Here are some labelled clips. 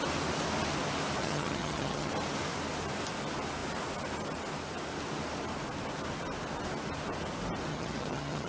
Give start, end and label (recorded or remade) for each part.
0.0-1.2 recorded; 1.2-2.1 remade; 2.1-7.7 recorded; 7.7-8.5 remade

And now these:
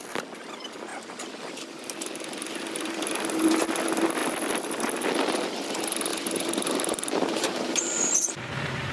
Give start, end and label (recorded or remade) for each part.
0.0-6.1 recorded; 6.1-8.5 remade; 8.5-8.9 recorded

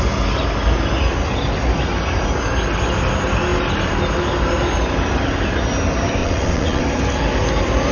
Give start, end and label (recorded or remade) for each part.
0.0-6.2 recorded; 6.2-6.8 remade; 6.8-7.9 recorded

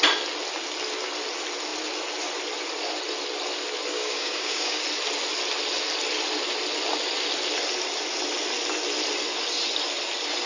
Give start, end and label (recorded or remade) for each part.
0.0-3.9 recorded; 3.9-4.8 remade; 4.8-10.5 recorded